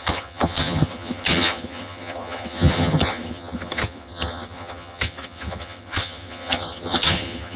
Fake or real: fake